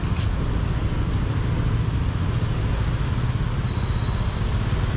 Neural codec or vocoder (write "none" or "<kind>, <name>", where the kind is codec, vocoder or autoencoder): none